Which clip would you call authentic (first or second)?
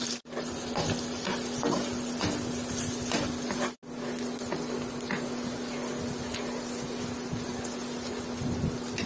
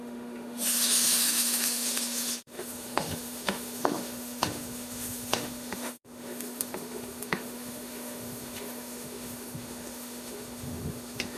first